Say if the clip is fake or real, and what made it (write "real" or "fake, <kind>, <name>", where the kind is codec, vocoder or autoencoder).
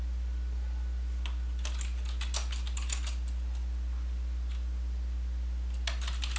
real